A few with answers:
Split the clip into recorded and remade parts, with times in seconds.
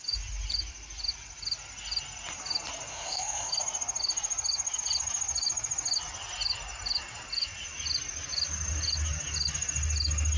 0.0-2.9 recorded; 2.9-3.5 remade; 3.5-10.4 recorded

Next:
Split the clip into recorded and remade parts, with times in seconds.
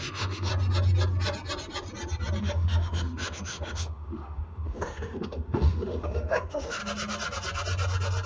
0.0-0.5 remade; 0.5-2.4 recorded; 2.4-6.8 remade; 6.8-8.3 recorded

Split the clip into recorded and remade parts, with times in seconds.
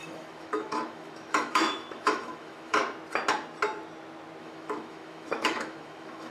0.0-2.8 remade; 2.8-4.4 recorded; 4.4-6.3 remade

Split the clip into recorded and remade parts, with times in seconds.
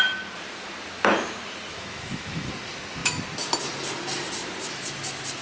0.0-1.7 recorded; 1.7-2.5 remade; 2.5-5.4 recorded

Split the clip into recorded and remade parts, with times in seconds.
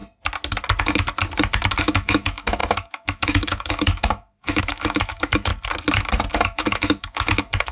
0.0-1.8 recorded; 1.8-5.5 remade; 5.5-6.3 recorded; 6.3-7.7 remade